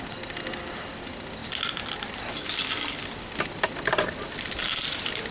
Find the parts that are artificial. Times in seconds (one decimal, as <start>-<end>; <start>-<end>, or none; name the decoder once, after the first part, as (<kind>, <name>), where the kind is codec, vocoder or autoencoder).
none